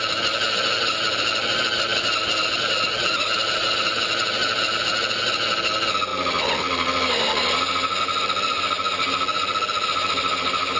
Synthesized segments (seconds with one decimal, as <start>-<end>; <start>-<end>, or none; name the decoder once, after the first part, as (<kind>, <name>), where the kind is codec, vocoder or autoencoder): none